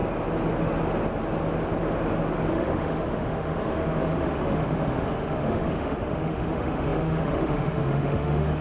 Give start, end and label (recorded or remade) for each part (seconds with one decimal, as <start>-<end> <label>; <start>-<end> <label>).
0.0-2.5 recorded; 2.5-8.6 remade